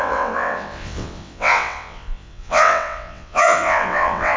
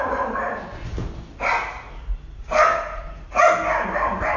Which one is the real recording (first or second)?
second